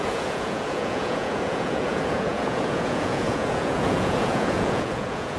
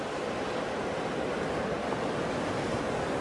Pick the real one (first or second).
second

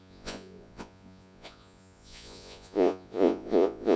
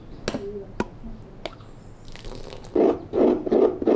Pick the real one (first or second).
second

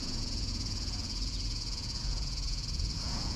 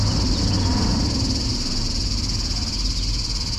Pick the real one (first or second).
second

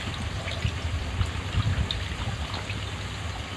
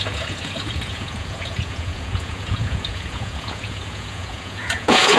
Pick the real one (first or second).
first